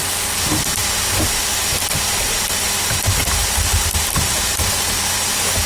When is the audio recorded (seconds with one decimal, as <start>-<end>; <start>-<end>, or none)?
0.0-5.7